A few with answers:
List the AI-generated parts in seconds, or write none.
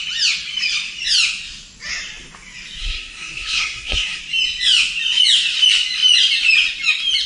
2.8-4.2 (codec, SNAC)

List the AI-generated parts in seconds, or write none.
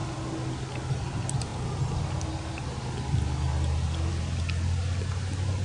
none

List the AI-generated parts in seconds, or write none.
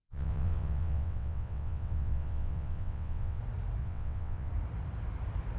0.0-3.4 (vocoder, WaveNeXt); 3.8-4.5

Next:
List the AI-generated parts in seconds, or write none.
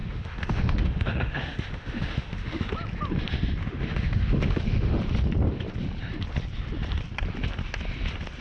0.0-2.7 (autoencoder, DAC-VAE); 3.6-5.0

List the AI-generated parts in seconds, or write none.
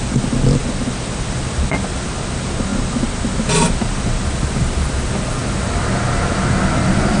none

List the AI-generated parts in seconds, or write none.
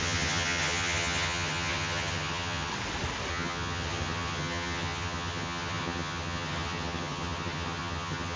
0.0-2.7 (vocoder, HiFi-GAN); 3.3-8.4